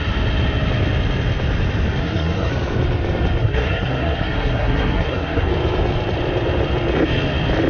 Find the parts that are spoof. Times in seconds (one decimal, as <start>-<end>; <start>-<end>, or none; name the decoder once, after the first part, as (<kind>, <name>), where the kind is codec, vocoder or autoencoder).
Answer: 2.0-2.5 (codec, SNAC); 3.4-5.5